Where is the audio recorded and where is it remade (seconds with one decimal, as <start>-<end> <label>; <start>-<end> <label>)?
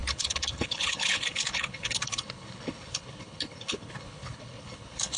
0.0-5.2 remade